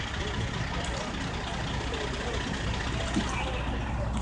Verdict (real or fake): real